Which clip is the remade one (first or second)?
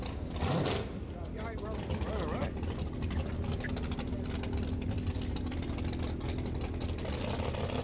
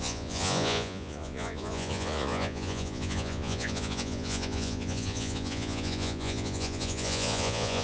second